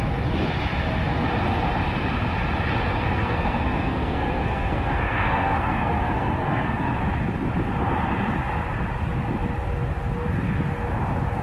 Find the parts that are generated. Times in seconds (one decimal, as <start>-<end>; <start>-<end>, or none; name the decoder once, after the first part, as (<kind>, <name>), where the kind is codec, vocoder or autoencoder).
2.9-6.9 (codec, SNAC)